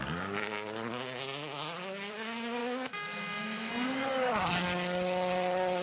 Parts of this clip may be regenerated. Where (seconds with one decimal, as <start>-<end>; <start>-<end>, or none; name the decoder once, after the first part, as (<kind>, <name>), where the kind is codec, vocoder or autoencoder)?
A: 2.6-3.7 (autoencoder, DAC-VAE)